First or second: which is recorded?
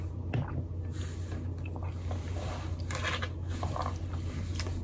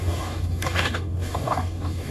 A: first